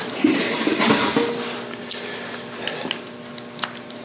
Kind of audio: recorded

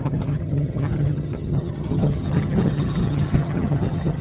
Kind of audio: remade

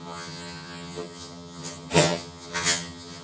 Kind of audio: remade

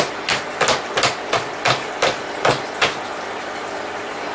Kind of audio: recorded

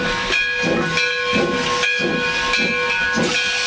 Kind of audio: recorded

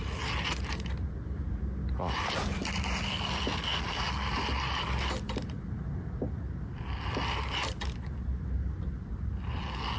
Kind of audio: recorded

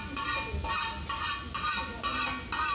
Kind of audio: recorded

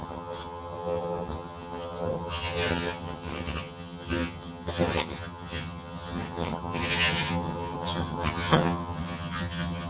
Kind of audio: remade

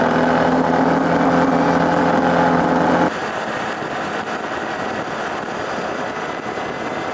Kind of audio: recorded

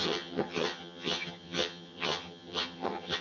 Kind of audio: remade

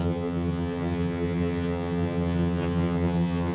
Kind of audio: remade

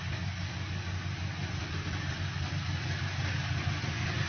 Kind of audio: recorded